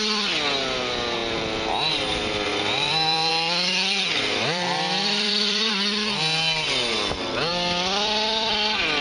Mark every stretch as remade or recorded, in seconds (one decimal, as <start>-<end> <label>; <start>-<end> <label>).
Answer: 0.0-2.5 recorded; 2.5-3.3 remade; 3.3-3.7 recorded; 3.7-5.7 remade; 5.7-7.5 recorded; 7.5-9.0 remade